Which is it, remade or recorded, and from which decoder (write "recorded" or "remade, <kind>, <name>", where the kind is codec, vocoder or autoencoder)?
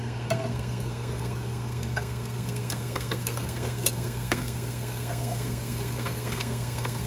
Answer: remade, codec, SNAC